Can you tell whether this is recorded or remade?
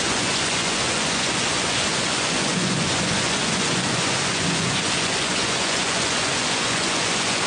remade